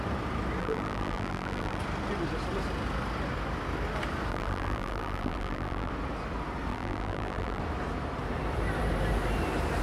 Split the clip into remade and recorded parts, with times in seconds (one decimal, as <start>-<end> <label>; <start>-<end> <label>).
0.0-0.6 recorded; 0.6-1.8 remade; 1.8-4.3 recorded; 4.3-5.9 remade; 5.9-6.7 recorded; 6.7-7.6 remade; 7.6-9.8 recorded